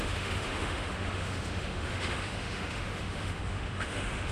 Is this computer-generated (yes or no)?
yes